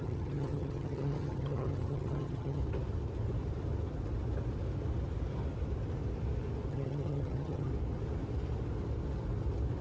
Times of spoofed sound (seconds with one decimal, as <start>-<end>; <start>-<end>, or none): 0.0-2.6; 6.7-7.7